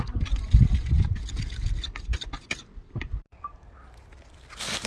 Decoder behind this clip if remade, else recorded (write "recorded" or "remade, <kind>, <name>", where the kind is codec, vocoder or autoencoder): recorded